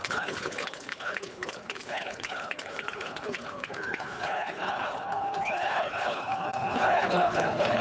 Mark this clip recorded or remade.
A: remade